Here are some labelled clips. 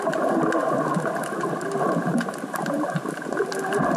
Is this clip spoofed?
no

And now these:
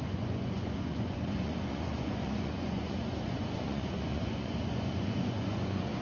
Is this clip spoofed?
yes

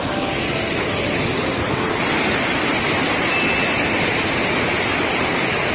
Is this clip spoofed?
no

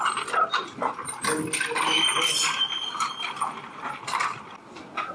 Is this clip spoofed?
no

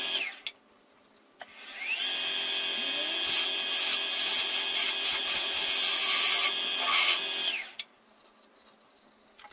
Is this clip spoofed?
no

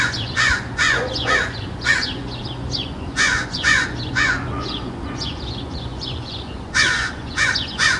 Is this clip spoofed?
yes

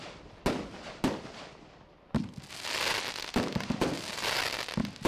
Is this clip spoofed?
no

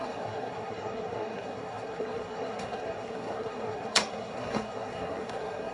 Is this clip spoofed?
yes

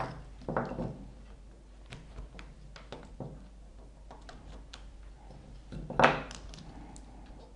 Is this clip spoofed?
no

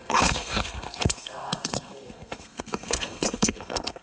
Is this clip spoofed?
yes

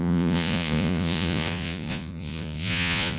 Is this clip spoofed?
yes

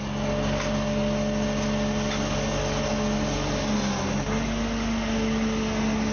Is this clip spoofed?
no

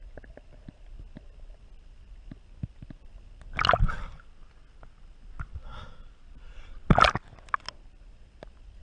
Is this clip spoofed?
no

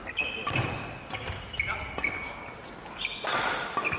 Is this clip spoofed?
no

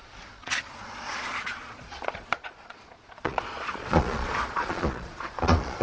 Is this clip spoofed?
yes